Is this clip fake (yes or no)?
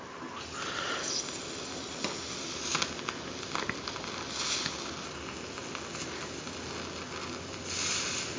no